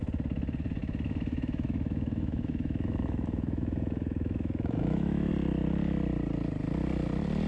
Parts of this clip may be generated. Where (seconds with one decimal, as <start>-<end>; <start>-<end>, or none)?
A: 0.8-5.3